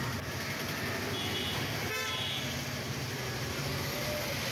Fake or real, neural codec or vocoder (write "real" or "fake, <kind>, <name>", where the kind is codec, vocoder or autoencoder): real